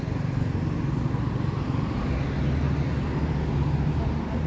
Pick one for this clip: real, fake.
real